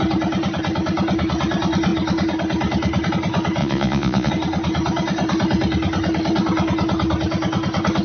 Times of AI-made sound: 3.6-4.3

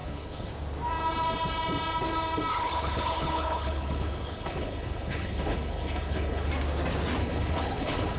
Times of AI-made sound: 0.0-0.5; 2.5-6.5; 7.2-8.2

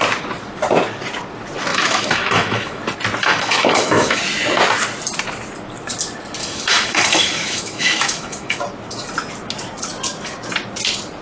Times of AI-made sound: 1.7-2.8; 3.2-4.2; 6.4-8.6

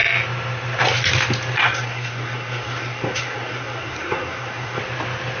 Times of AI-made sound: 1.6-4.8

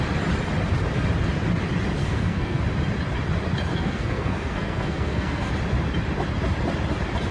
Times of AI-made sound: 2.0-2.6; 3.7-5.5

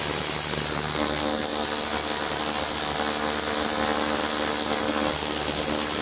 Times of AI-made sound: none